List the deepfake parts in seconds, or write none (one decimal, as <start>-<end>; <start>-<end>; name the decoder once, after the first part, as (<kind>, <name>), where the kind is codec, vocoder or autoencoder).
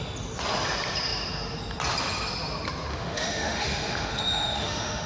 2.9-5.1 (autoencoder, DAC-VAE)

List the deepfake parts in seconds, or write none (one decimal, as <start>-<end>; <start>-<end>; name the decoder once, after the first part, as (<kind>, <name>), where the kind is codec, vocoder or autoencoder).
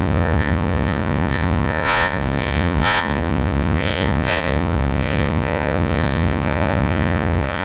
0.0-7.6 (vocoder, Vocos)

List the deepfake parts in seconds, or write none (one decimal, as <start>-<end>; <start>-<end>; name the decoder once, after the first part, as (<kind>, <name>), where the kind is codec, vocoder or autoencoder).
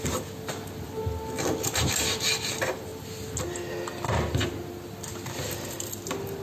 none